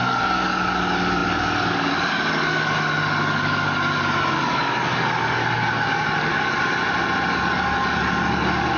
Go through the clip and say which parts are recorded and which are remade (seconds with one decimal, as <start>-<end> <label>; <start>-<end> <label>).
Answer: 0.0-6.8 remade; 6.8-7.3 recorded; 7.3-8.8 remade